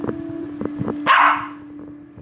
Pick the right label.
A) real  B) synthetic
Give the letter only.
A